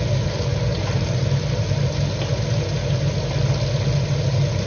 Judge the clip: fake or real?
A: real